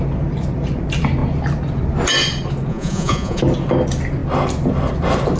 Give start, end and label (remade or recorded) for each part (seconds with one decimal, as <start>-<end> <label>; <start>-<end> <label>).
0.0-2.7 recorded; 2.7-3.4 remade; 3.4-5.4 recorded